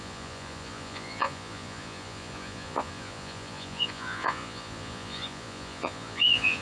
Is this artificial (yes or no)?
yes